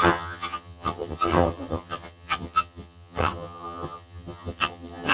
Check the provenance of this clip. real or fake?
fake